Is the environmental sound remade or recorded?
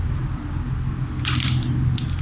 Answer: recorded